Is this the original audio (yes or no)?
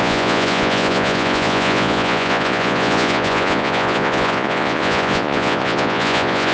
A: no